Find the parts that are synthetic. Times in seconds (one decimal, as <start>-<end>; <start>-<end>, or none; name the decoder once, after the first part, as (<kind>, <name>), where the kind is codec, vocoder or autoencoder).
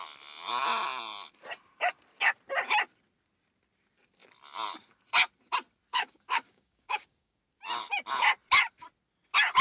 5.9-7.4 (codec, DAC)